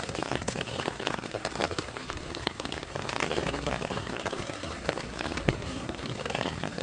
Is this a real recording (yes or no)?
no